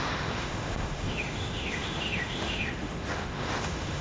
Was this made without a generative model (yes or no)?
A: no